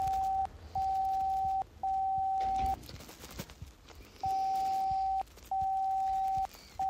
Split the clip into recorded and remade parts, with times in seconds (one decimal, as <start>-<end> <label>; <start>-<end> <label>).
0.0-6.9 recorded